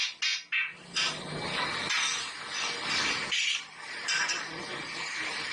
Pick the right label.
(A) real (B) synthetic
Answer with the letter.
A